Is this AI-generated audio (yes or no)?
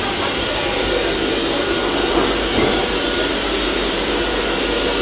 no